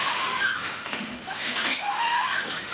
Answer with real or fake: fake